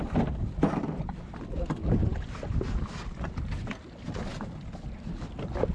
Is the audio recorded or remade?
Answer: recorded